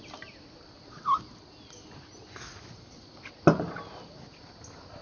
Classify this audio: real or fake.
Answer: real